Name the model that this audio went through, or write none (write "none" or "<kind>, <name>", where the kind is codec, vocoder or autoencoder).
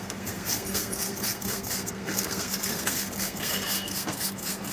codec, SNAC